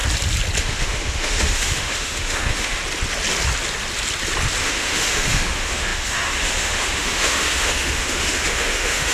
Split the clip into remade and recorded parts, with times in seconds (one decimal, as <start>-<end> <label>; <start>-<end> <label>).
0.0-0.6 recorded; 0.6-2.8 remade; 2.8-4.6 recorded; 4.6-9.1 remade